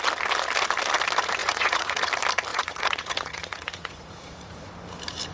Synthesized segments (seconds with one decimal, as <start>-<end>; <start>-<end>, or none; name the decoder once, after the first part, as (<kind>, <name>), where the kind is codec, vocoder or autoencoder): 1.4-2.1 (vocoder, Vocos); 2.5-4.7